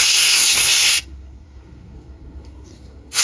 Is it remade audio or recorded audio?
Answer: remade